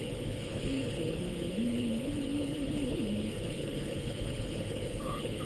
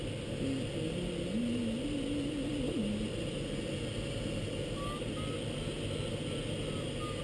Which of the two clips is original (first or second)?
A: second